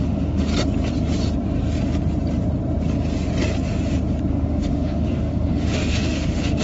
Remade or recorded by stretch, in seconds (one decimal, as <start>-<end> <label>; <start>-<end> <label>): 0.0-0.5 remade; 0.5-4.3 recorded; 4.3-6.6 remade